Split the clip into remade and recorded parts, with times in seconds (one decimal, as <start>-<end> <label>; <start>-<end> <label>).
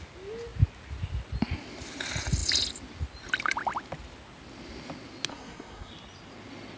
0.0-5.3 recorded; 5.3-5.9 remade; 5.9-6.8 recorded